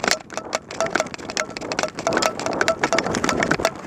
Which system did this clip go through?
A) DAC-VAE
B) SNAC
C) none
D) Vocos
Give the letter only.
C